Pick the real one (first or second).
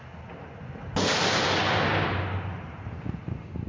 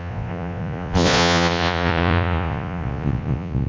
first